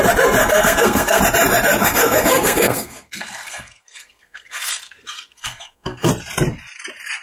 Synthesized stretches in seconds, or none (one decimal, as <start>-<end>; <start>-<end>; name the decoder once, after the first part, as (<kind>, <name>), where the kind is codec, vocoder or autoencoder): 0.4-1.2 (codec, SNAC); 1.8-6.1